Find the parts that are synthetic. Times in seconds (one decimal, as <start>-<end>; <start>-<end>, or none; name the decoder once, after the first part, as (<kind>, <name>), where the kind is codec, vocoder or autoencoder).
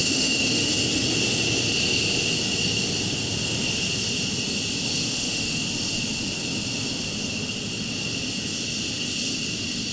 0.0-0.7 (autoencoder, DAC-VAE); 5.0-5.6